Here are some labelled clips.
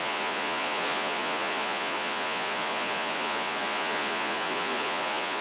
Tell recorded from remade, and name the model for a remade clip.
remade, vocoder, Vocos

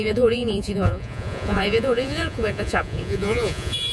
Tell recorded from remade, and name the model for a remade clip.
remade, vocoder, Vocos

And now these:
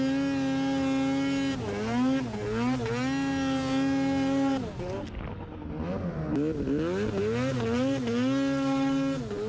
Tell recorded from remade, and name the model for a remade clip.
recorded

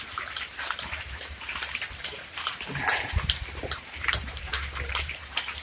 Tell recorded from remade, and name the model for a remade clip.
remade, vocoder, BigVGAN v2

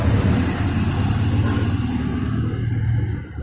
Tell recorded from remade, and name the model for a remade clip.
recorded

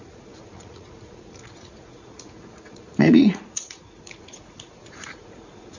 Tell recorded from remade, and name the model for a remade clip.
remade, vocoder, Vocos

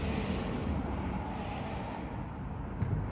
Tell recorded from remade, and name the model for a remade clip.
recorded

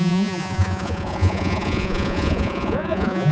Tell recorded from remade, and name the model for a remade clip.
remade, vocoder, Vocos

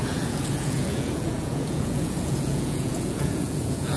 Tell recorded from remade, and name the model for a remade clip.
remade, vocoder, Vocos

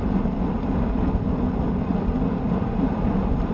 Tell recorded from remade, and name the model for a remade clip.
recorded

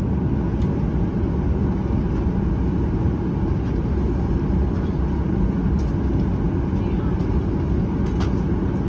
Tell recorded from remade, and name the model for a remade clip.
recorded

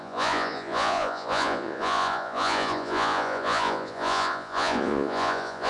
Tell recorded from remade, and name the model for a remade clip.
remade, vocoder, Vocos